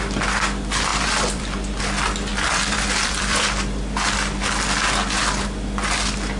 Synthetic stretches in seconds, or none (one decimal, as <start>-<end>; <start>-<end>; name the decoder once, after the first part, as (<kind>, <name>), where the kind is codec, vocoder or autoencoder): 0.9-1.8 (vocoder, BigVGAN v2); 2.3-3.8